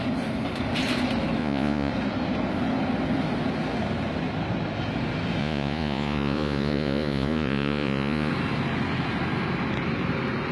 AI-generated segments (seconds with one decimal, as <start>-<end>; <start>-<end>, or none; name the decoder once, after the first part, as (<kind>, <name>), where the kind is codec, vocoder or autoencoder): 1.4-1.9 (vocoder, Vocos); 5.4-8.3